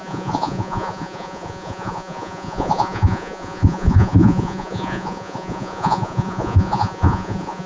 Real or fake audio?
fake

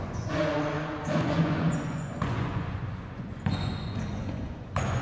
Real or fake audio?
fake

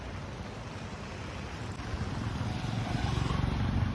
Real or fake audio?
real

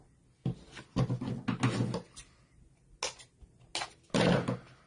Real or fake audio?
real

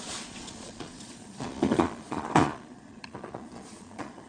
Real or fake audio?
fake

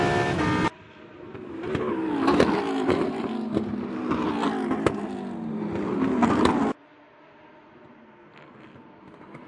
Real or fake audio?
real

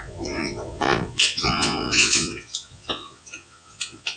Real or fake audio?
fake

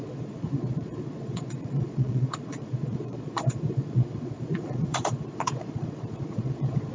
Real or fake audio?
fake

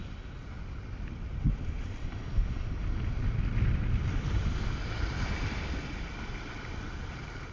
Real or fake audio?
real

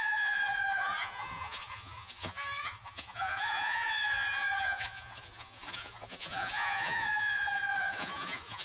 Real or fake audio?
fake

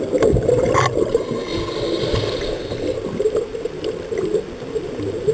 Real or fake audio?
real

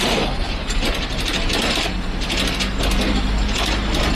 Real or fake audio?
real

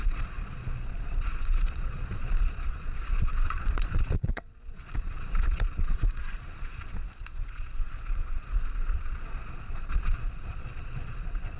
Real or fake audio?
fake